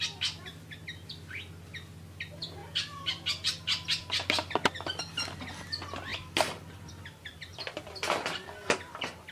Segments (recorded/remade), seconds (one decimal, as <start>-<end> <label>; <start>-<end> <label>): 0.0-9.3 recorded